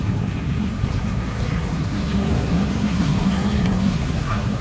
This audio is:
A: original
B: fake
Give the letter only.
B